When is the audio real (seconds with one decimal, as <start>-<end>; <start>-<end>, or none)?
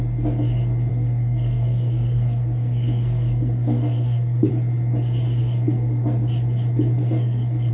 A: 0.0-0.9; 4.5-5.4; 6.3-7.0